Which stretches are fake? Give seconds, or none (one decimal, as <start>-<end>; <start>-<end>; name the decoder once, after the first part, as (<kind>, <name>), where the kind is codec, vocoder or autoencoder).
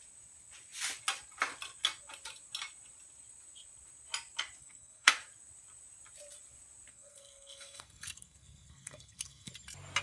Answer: 4.6-5.1 (codec, SNAC); 6.9-9.5